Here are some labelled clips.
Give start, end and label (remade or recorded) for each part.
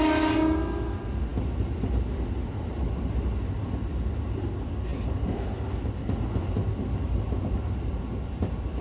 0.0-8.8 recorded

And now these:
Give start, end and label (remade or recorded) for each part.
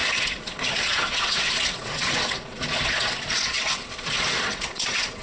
0.0-5.2 remade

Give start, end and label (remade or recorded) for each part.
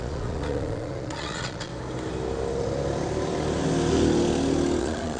0.0-1.7 remade; 1.7-4.8 recorded; 4.8-5.2 remade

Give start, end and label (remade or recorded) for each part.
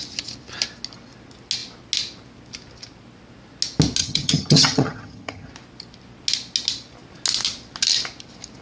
0.0-4.0 recorded; 4.0-5.5 remade; 5.5-8.6 recorded